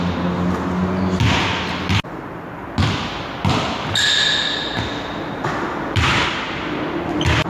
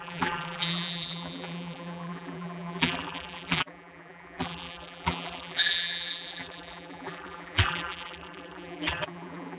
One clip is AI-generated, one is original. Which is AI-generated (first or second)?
second